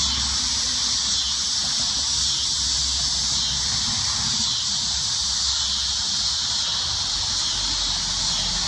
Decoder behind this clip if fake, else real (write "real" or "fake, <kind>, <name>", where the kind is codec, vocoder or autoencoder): real